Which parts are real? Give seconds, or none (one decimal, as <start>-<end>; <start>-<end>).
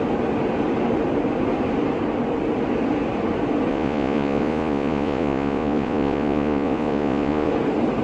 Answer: 0.0-3.7; 7.5-8.0